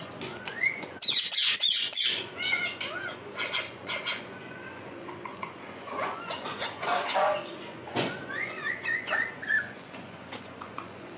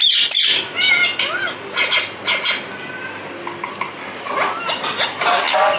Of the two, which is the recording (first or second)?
second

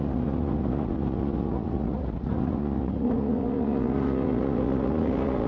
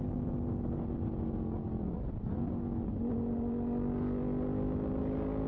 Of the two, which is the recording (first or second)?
second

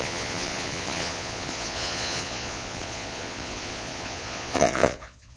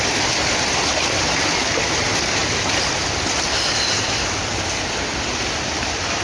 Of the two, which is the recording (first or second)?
second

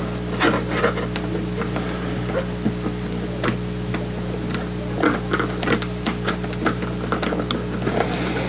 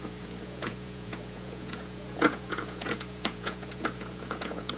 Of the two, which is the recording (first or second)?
first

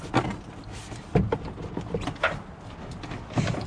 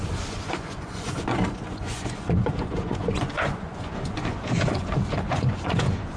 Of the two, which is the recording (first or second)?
first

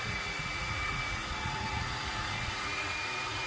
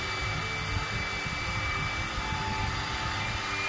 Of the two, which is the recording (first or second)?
second